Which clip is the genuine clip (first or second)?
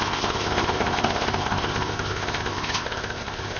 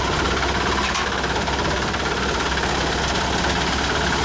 second